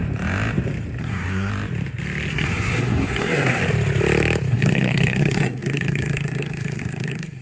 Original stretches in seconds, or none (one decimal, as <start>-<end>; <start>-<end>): 0.0-1.0; 1.5-2.3; 3.6-4.5